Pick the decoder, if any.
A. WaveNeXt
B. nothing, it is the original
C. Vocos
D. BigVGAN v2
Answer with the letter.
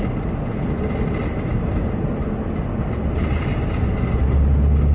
B